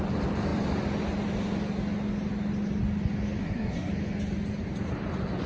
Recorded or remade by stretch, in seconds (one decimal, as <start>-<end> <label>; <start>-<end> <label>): 0.0-3.4 recorded; 3.4-3.9 remade; 3.9-5.5 recorded